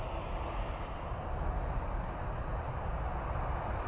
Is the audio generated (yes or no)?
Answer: no